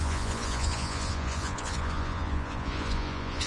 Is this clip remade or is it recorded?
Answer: remade